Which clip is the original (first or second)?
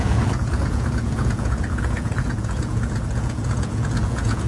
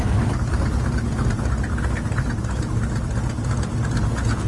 second